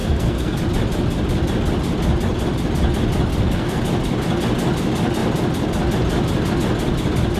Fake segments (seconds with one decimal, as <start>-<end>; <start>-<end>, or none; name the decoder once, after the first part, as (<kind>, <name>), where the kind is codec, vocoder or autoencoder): 0.0-0.6 (codec, SNAC); 3.3-3.8